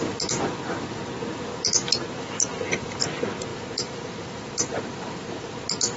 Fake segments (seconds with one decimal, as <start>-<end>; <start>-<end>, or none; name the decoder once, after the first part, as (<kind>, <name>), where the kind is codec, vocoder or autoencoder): 1.5-3.0 (vocoder, BigVGAN v2); 3.5-5.6